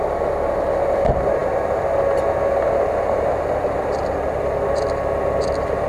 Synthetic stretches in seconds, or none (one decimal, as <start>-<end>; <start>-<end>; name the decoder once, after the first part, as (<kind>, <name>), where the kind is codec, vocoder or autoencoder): none